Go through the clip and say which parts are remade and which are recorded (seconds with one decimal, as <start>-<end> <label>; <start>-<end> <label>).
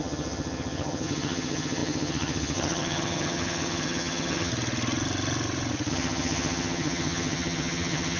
0.0-4.5 remade; 4.5-5.9 recorded; 5.9-8.2 remade